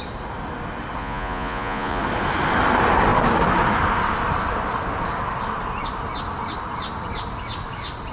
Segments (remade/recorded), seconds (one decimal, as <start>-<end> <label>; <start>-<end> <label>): 0.0-1.0 recorded; 1.0-2.0 remade; 2.0-8.1 recorded